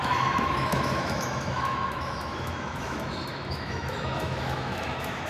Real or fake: fake